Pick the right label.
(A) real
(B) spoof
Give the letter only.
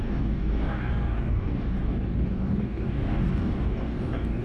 B